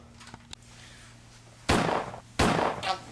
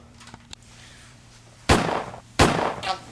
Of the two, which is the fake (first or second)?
second